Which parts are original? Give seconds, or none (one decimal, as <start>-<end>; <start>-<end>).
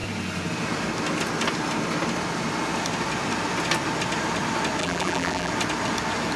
0.0-4.8; 5.5-6.4